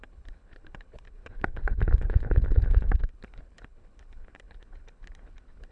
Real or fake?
fake